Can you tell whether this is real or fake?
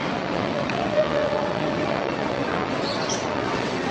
fake